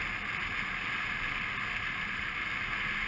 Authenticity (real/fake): real